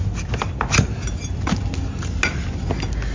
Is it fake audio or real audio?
real